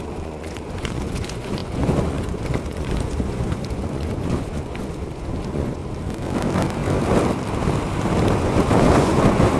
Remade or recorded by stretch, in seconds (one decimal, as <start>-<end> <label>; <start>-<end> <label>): 0.0-5.8 remade; 5.8-8.4 recorded; 8.4-9.6 remade